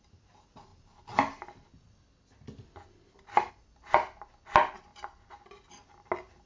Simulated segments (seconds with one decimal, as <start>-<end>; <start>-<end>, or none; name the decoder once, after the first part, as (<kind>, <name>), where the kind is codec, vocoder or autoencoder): none